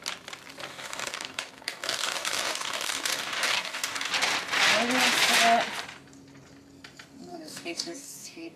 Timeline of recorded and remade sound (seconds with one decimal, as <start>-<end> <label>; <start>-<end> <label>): 0.0-0.7 recorded; 0.7-4.1 remade; 4.1-7.3 recorded; 7.3-8.6 remade